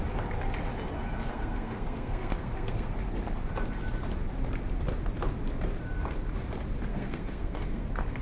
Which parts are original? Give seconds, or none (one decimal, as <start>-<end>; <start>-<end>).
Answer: 0.0-1.3; 2.9-6.9